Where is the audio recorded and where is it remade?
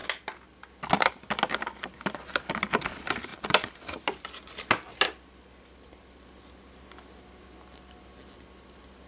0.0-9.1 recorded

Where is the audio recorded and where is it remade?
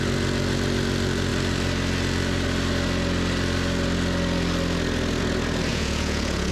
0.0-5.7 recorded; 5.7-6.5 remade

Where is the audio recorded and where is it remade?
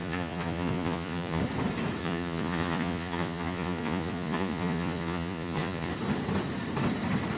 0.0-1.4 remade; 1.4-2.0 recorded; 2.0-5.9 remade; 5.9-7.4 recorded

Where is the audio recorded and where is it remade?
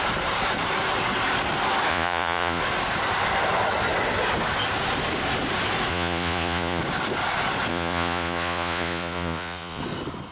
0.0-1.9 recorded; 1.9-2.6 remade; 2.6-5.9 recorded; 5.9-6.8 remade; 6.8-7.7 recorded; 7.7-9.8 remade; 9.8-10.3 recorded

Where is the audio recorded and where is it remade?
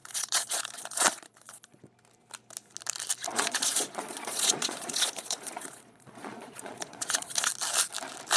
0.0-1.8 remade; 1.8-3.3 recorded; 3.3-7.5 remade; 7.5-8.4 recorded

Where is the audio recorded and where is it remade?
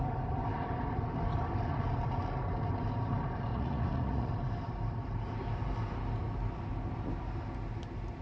0.0-3.5 recorded; 3.5-4.3 remade; 4.3-8.2 recorded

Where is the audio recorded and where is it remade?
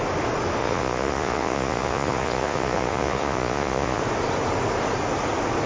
0.0-0.6 recorded; 0.6-4.0 remade; 4.0-5.7 recorded